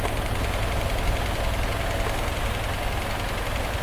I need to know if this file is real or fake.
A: real